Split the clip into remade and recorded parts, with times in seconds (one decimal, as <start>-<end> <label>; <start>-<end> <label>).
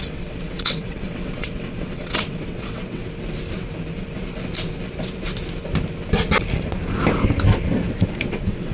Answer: 0.0-3.0 remade; 3.0-8.2 recorded; 8.2-8.7 remade